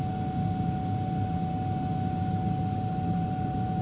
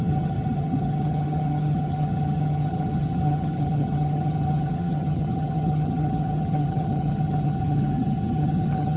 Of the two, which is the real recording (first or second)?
first